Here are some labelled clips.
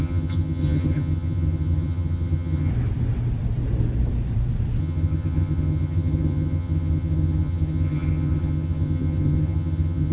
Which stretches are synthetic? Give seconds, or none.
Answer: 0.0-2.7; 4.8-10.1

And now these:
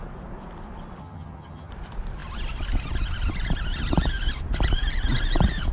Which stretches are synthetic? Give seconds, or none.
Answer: 1.0-1.7